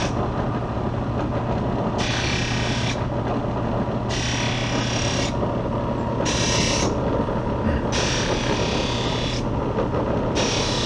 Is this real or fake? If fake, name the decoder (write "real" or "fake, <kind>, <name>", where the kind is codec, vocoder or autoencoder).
real